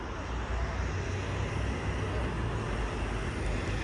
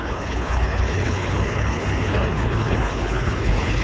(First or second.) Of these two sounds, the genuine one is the first